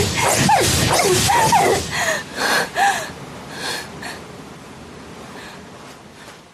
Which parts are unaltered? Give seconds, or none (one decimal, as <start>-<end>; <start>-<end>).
0.0-6.5